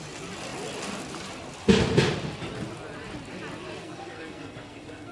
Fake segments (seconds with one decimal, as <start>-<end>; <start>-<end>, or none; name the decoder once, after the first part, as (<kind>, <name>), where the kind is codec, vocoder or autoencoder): 3.8-5.1 (codec, SNAC)